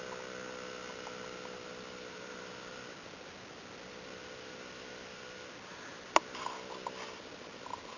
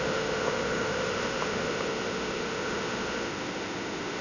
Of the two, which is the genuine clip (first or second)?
first